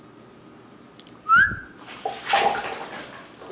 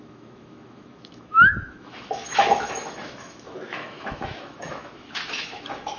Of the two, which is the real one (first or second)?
first